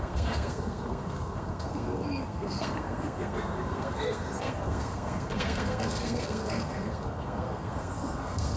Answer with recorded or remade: remade